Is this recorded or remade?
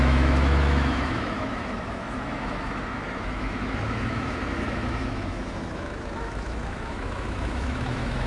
remade